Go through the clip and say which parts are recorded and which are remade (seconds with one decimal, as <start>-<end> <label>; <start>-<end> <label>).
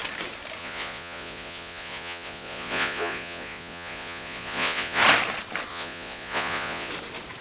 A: 0.0-0.6 recorded; 0.6-5.0 remade; 5.0-5.7 recorded; 5.7-6.9 remade; 6.9-7.4 recorded